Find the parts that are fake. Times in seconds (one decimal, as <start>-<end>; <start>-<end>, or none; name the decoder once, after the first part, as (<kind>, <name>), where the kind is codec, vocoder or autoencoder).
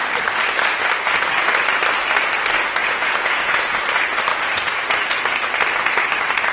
2.8-3.8 (vocoder, Vocos); 4.3-5.0